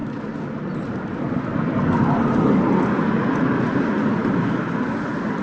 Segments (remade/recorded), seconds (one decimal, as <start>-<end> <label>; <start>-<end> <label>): 0.0-5.4 recorded